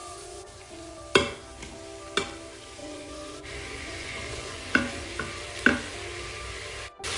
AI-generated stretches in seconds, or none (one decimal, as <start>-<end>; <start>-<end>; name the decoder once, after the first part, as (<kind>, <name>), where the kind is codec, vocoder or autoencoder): 0.0-1.0 (vocoder, Vocos); 2.8-5.4